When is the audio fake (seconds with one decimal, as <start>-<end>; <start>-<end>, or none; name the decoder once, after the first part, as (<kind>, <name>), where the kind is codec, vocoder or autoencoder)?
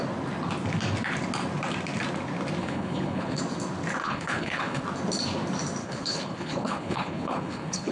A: 2.6-3.4 (codec, HILCodec); 4.0-4.8; 5.8-7.9